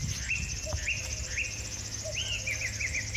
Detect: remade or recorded recorded